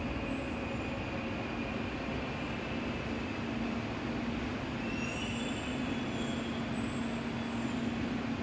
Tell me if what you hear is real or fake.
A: real